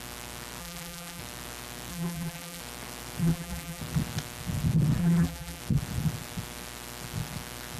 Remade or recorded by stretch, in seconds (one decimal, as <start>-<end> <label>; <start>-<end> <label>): 0.0-0.6 recorded; 0.6-1.2 remade; 1.2-1.9 recorded; 1.9-2.6 remade; 2.6-3.2 recorded; 3.2-3.8 remade; 3.8-5.0 recorded; 5.0-5.6 remade; 5.6-7.8 recorded